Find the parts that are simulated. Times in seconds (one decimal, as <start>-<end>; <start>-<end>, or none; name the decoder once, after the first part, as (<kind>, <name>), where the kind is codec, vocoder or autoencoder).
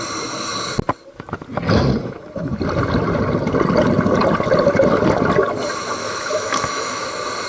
2.0-2.5 (autoencoder, DAC-VAE); 6.0-7.1